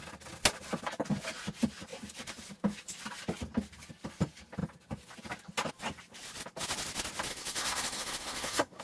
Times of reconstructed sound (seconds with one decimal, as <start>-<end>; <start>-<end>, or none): 7.3-8.8